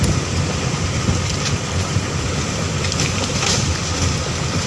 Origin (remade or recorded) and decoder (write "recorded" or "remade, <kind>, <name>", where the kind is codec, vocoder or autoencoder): recorded